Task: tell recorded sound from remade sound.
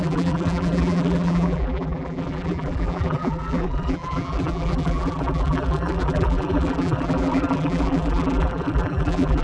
remade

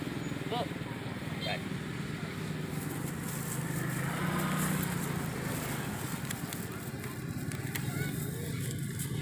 recorded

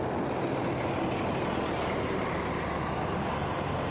recorded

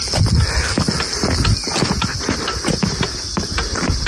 recorded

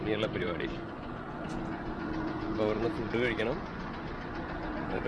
remade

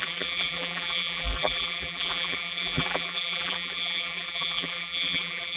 remade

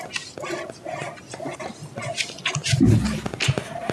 recorded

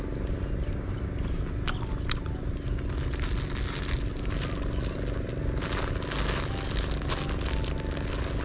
recorded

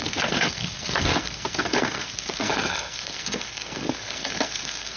remade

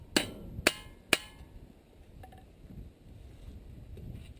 recorded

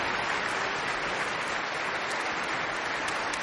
recorded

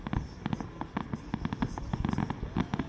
recorded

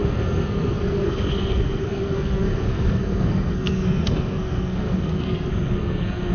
remade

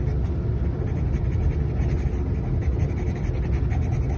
recorded